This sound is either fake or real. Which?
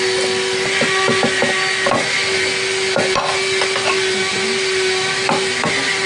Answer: real